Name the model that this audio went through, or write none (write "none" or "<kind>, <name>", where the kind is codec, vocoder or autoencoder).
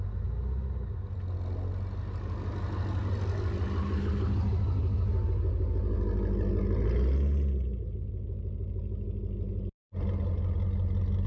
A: none